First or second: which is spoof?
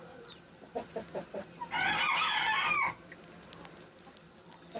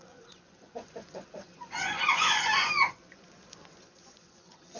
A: second